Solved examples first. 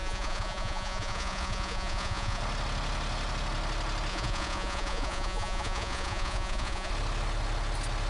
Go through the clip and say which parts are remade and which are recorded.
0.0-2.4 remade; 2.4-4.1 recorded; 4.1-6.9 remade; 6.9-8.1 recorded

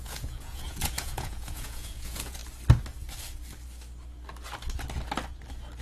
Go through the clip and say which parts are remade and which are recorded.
0.0-2.4 remade; 2.4-5.8 recorded

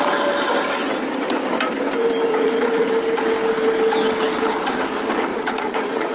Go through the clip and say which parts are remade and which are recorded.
0.0-2.3 recorded; 2.3-2.9 remade; 2.9-5.3 recorded; 5.3-6.1 remade